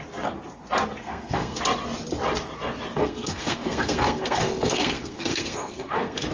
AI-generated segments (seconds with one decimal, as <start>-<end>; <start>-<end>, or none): 1.0-1.6; 3.0-6.3